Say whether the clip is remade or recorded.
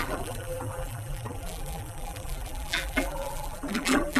remade